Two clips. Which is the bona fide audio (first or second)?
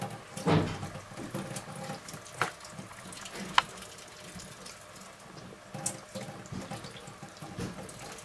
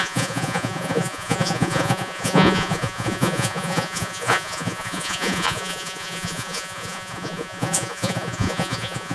first